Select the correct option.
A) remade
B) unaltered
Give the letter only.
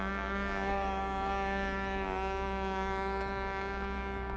A